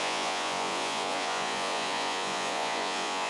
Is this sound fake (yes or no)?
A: yes